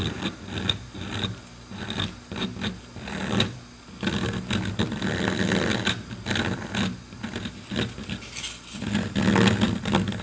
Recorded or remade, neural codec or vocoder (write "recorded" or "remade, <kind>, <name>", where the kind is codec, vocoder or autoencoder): recorded